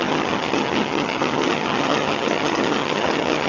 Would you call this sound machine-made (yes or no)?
yes